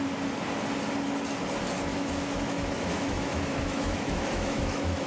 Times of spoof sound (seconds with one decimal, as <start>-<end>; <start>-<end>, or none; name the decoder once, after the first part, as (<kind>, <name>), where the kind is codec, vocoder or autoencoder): 1.9-5.1 (autoencoder, DAC-VAE)